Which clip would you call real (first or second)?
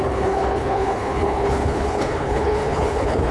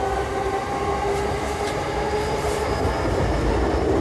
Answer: second